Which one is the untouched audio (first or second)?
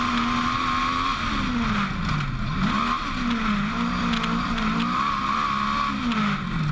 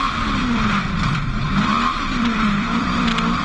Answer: first